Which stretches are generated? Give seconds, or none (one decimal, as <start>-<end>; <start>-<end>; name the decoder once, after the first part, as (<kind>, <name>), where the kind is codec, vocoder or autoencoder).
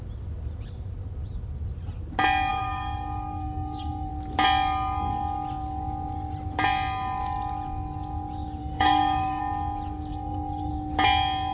2.5-4.1 (codec, DAC); 8.6-9.4; 10.1-10.7